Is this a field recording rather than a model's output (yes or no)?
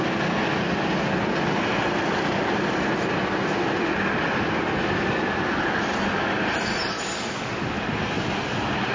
yes